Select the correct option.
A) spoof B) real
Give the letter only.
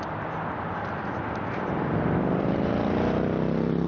A